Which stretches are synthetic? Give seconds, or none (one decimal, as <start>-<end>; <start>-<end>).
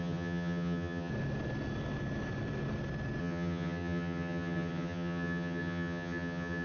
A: 0.0-1.1; 3.2-6.6